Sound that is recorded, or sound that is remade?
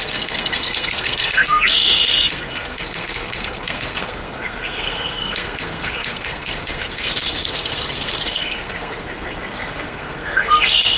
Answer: remade